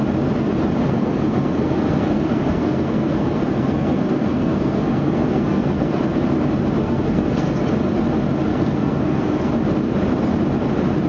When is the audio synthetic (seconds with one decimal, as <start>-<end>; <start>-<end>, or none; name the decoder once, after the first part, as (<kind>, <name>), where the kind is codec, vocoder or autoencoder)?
0.8-6.0 (codec, SNAC); 6.8-7.6; 8.5-9.5